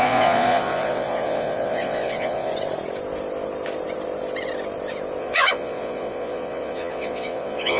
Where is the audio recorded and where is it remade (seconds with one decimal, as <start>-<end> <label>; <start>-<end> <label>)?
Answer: 0.0-2.5 remade; 2.5-5.2 recorded; 5.2-7.8 remade